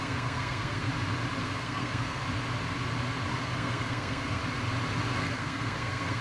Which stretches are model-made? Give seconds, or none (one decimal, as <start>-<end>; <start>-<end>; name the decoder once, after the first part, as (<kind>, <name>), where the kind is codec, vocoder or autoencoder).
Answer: 0.0-0.9 (codec, SNAC); 1.4-2.2; 3.3-4.4; 5.2-6.2